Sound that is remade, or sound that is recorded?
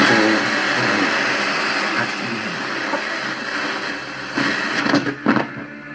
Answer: recorded